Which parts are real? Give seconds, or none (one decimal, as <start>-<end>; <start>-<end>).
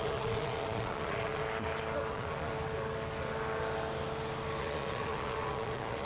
1.4-2.1; 2.5-4.6